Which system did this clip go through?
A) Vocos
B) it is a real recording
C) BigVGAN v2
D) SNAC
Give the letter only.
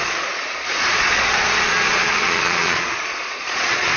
A